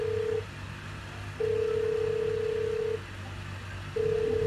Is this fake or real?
real